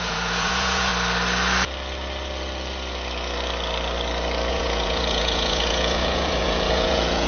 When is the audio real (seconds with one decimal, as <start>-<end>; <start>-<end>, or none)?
0.9-4.5